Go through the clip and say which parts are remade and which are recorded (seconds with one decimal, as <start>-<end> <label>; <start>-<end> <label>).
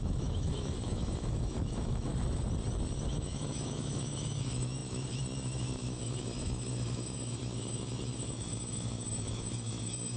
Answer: 0.0-2.1 remade; 2.1-3.1 recorded; 3.1-10.2 remade